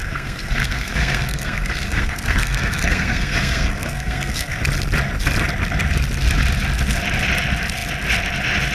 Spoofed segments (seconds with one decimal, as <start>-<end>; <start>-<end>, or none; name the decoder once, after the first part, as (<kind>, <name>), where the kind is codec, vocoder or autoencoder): 0.0-4.6 (codec, SNAC)